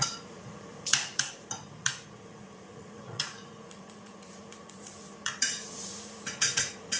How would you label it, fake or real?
fake